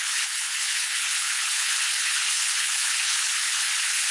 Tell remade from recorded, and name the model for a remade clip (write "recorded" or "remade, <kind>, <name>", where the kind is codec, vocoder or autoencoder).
remade, codec, HILCodec